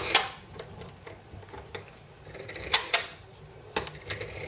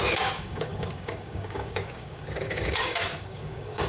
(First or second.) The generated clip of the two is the second